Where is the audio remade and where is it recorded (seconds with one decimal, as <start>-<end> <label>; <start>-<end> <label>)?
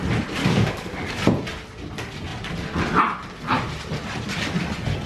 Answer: 0.0-0.4 recorded; 0.4-1.2 remade; 1.2-5.1 recorded